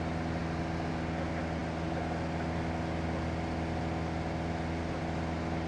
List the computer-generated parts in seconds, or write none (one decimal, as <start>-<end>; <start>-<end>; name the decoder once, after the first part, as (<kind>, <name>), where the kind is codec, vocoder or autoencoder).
none

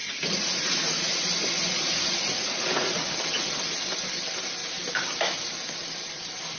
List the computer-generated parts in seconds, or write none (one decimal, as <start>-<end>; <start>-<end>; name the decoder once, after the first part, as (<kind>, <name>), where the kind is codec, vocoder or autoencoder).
0.0-3.5 (vocoder, Vocos)

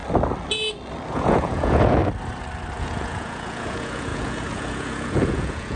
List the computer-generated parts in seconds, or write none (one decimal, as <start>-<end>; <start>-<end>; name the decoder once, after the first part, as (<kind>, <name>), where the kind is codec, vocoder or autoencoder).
1.1-2.0 (vocoder, Vocos); 2.8-5.8